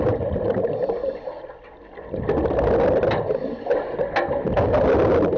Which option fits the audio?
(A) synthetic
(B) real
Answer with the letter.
B